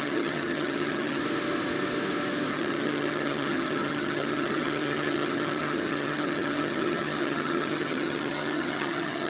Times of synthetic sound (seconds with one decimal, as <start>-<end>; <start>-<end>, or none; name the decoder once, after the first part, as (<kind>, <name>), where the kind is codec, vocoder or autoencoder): 0.0-1.2 (vocoder, HiFi-GAN); 2.5-9.3